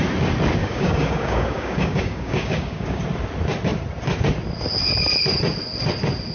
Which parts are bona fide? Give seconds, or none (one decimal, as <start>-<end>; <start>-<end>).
0.0-0.6; 3.0-6.3